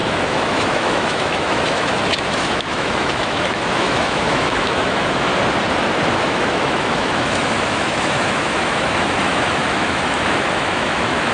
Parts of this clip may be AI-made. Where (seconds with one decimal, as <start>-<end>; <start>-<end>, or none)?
0.0-5.3; 6.2-11.3